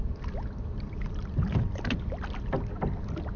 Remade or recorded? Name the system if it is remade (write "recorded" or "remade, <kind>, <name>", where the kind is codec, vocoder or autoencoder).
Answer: recorded